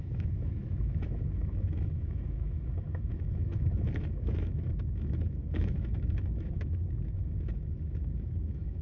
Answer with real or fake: fake